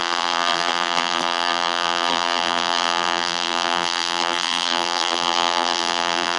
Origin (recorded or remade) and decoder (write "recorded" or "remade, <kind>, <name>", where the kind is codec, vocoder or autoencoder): remade, vocoder, BigVGAN v2